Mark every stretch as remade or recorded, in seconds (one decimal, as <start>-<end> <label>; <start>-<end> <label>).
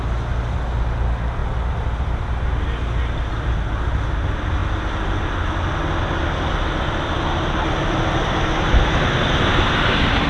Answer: 0.0-10.3 recorded